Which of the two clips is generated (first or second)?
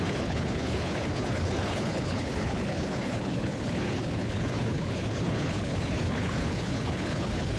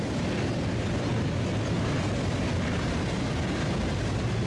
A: first